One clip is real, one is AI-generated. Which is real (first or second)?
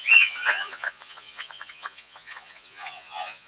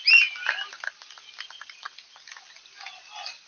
second